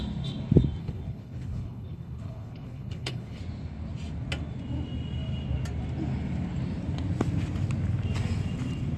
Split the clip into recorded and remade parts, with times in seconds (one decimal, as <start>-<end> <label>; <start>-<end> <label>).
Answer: 0.0-0.8 recorded; 0.8-3.4 remade; 3.4-9.0 recorded